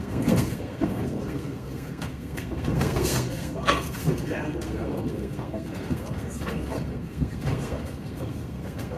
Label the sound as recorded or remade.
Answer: remade